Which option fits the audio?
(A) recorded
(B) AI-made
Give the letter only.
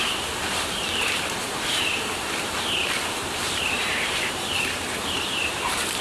B